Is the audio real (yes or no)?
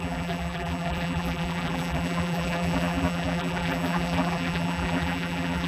no